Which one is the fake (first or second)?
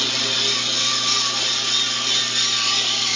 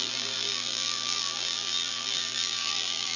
second